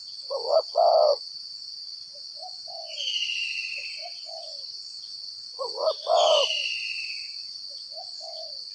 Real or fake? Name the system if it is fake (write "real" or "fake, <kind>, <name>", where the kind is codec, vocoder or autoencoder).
fake, vocoder, Vocos